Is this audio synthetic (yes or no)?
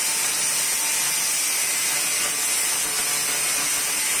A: no